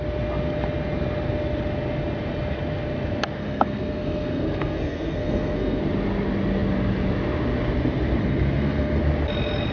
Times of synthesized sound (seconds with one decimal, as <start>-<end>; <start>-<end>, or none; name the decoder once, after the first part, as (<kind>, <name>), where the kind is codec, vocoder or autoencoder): 3.4-5.8 (codec, SNAC); 8.2-9.0